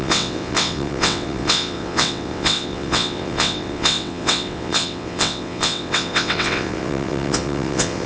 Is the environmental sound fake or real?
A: fake